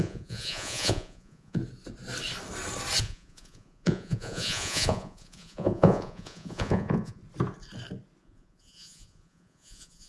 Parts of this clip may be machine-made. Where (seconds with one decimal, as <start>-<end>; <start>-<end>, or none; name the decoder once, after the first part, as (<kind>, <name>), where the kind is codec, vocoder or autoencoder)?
0.0-1.6 (vocoder, Vocos); 3.0-7.2; 8.2-10.1